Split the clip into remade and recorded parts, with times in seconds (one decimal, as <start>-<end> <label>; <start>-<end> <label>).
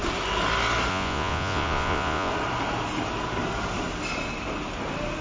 0.0-0.9 recorded; 0.9-2.3 remade; 2.3-5.2 recorded